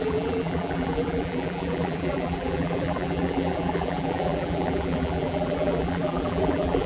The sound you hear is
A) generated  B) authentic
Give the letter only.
A